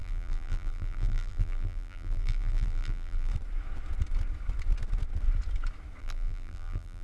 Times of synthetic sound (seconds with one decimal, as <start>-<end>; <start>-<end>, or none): 0.0-3.3; 6.0-7.0